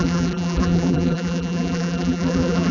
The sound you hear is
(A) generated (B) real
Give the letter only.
A